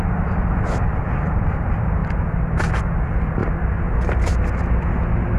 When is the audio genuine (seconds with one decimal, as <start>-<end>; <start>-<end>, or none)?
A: 0.0-5.4